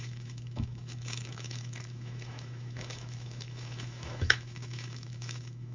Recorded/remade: remade